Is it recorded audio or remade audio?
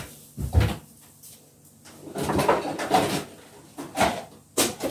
recorded